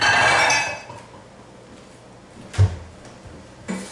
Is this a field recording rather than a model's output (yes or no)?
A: yes